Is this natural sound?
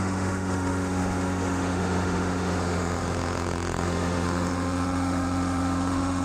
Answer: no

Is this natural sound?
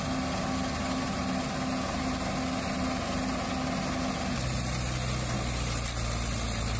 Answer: yes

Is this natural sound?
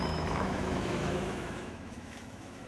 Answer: no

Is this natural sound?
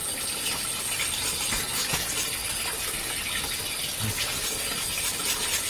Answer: yes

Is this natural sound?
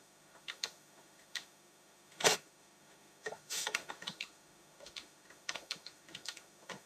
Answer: no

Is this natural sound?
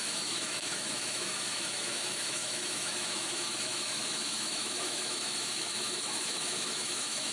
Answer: no